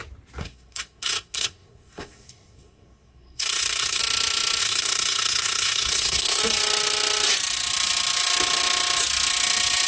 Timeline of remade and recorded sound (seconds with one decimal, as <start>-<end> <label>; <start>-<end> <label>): 0.0-0.4 recorded; 0.4-4.0 remade; 4.0-4.6 recorded; 4.6-6.4 remade; 6.4-9.9 recorded